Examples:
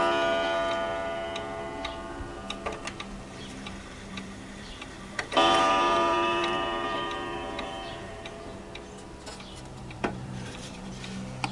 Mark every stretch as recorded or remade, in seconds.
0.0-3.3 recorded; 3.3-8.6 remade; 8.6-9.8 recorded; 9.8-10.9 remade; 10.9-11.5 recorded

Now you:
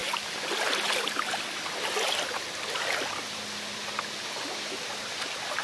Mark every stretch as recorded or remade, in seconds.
0.0-5.6 recorded

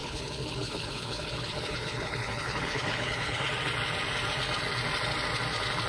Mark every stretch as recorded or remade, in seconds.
0.0-3.5 remade; 3.5-5.9 recorded

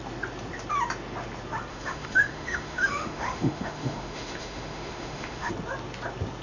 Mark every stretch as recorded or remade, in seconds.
0.0-1.7 recorded; 1.7-5.5 remade; 5.5-6.4 recorded

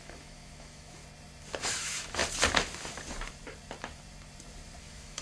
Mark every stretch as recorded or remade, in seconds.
0.0-1.0 remade; 1.0-1.6 recorded; 1.6-2.2 remade; 2.2-4.8 recorded; 4.8-5.2 remade

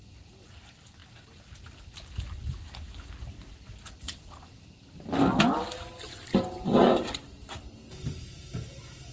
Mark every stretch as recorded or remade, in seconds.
0.0-9.1 recorded

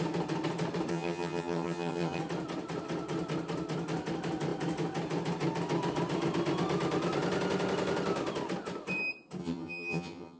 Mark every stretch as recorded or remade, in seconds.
0.0-0.9 recorded; 0.9-2.2 remade; 2.2-9.4 recorded; 9.4-10.4 remade

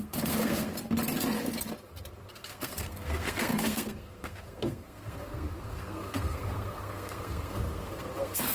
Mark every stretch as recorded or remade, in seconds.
0.0-0.7 remade; 0.7-2.3 recorded; 2.3-8.5 remade